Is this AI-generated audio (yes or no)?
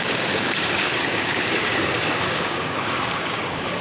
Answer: yes